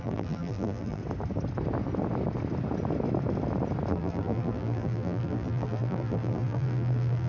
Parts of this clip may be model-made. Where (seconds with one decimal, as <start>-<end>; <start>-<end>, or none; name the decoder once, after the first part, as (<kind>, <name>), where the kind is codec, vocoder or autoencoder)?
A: 0.0-1.0 (vocoder, BigVGAN v2); 3.9-7.3